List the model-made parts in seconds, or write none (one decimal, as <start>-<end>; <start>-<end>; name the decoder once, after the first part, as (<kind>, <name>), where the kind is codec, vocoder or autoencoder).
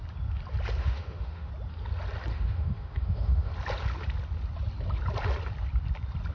0.8-1.5 (autoencoder, DAC-VAE); 2.3-3.5